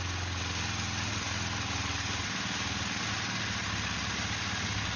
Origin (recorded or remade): recorded